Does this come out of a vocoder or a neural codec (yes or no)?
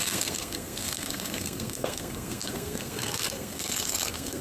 yes